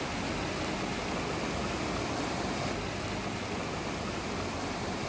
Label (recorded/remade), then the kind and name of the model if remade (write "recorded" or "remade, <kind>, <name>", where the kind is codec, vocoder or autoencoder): recorded